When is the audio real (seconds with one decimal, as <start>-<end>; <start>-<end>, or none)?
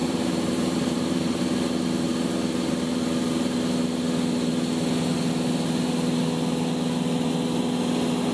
1.4-8.3